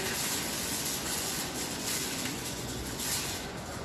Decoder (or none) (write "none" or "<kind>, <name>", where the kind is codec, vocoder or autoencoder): vocoder, Vocos